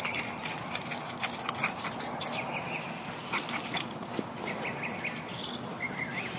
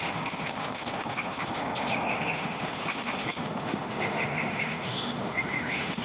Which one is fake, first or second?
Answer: second